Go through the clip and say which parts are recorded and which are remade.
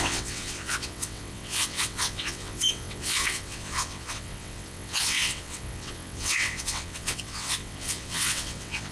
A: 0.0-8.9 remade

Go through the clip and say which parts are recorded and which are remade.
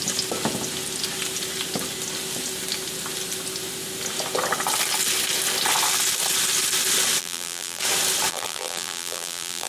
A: 0.0-7.2 recorded; 7.2-7.8 remade; 7.8-8.3 recorded; 8.3-9.7 remade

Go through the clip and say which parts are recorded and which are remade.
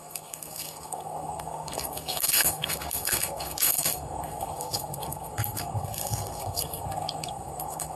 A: 0.0-8.0 remade